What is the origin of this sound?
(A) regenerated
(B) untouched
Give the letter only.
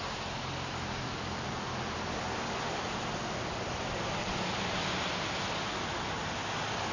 B